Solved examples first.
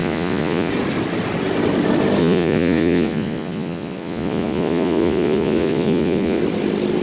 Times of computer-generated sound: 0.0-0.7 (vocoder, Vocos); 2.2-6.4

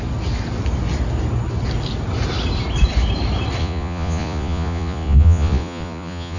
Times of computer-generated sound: 3.6-6.4 (vocoder, Vocos)